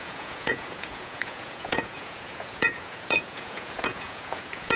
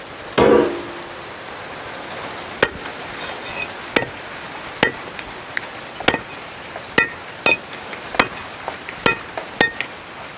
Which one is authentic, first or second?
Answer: second